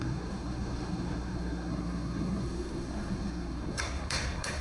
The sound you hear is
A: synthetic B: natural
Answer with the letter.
A